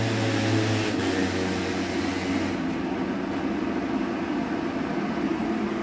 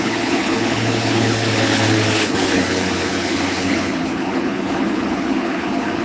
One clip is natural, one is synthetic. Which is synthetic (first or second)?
second